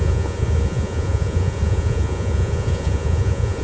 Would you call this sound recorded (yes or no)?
no